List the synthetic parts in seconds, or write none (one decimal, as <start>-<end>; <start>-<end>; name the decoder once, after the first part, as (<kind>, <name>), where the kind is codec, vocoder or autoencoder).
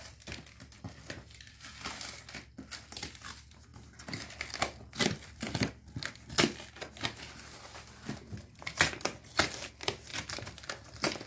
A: none